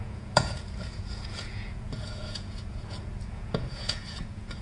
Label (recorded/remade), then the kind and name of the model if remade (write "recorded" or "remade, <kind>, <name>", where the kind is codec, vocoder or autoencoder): remade, vocoder, Vocos